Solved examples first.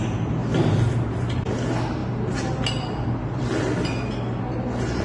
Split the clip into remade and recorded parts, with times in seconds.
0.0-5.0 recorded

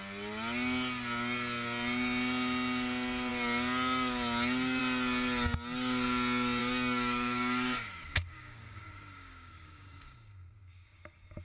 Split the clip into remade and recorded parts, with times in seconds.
0.0-6.6 recorded; 6.6-11.0 remade; 11.0-11.4 recorded

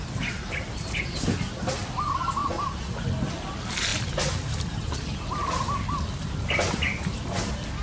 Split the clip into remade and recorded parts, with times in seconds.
0.0-7.8 recorded

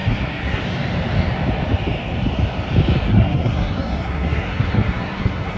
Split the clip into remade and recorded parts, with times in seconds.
0.0-0.6 remade; 0.6-3.1 recorded; 3.1-5.6 remade

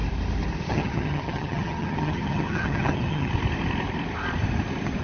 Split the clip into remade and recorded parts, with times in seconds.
0.0-0.7 recorded; 0.7-3.3 remade; 3.3-5.0 recorded

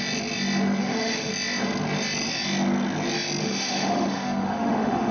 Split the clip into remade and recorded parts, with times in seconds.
0.0-0.8 recorded; 0.8-1.3 remade; 1.3-3.4 recorded; 3.4-5.1 remade

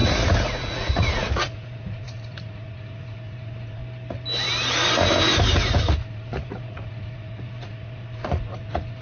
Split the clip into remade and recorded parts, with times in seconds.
0.0-0.6 recorded; 0.6-3.8 remade; 3.8-5.9 recorded; 5.9-9.0 remade